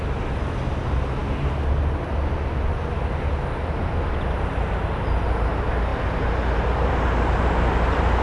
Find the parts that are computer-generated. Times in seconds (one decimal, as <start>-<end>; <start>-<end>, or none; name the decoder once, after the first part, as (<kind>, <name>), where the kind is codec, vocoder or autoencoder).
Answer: none